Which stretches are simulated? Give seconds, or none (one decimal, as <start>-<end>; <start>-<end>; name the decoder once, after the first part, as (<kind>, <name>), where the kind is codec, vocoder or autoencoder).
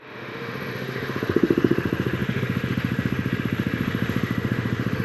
0.0-5.0 (autoencoder, DAC-VAE)